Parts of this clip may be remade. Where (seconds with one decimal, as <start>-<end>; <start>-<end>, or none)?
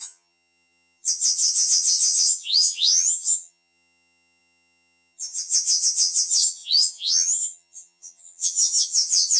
0.0-9.4